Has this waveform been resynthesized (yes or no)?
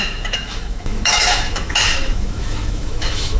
yes